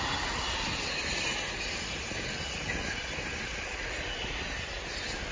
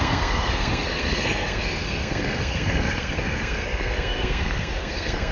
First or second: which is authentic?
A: first